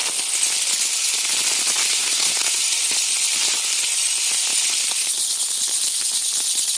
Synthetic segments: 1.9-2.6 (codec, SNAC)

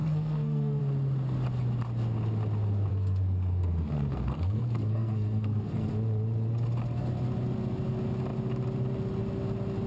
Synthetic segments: 0.0-0.8 (codec, SNAC); 2.9-5.9